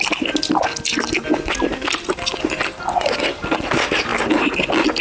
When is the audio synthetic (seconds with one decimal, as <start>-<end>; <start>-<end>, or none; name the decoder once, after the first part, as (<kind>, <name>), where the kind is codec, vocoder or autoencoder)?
none